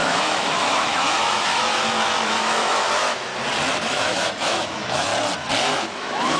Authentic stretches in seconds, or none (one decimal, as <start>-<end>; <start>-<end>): 3.3-3.8; 5.1-5.7